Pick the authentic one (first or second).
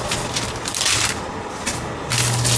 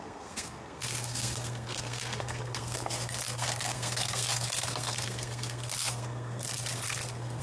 first